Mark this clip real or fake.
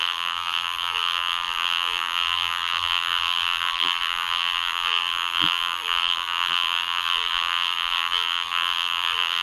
fake